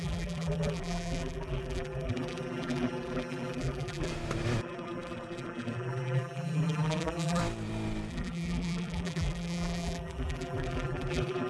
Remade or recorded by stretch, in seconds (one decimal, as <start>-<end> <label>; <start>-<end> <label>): 0.0-4.1 remade; 4.1-4.6 recorded; 4.6-7.4 remade; 7.4-8.1 recorded; 8.1-11.5 remade